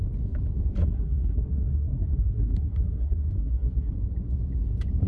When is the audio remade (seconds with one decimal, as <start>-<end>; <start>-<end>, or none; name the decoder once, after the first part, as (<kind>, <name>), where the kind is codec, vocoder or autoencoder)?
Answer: 0.8-3.9 (codec, SNAC)